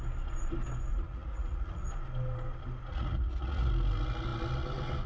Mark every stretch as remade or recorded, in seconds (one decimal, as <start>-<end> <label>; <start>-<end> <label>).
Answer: 0.0-0.9 recorded; 0.9-1.9 remade; 1.9-2.9 recorded; 2.9-3.7 remade; 3.7-5.1 recorded